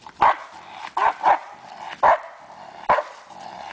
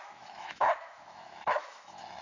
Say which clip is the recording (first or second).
first